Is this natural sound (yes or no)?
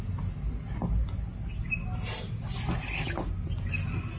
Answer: yes